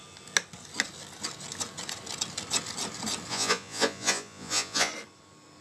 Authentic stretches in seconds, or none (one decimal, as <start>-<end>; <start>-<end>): 0.0-3.3; 4.9-5.6